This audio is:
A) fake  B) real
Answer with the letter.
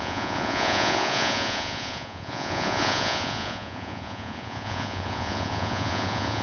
A